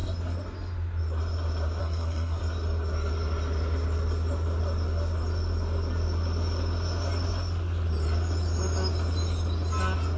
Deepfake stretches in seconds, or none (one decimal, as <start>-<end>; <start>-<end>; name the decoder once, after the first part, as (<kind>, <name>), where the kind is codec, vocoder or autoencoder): 1.8-2.4 (codec, SNAC)